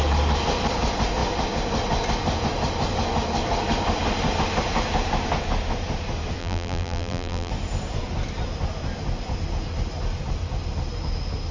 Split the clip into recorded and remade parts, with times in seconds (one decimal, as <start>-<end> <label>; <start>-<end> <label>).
0.0-6.4 recorded; 6.4-7.5 remade; 7.5-11.5 recorded